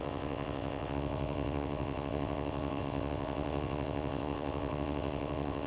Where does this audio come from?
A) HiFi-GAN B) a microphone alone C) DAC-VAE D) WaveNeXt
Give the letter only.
D